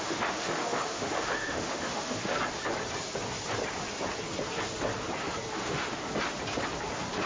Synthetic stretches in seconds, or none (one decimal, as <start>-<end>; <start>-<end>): 0.0-2.3; 5.5-6.0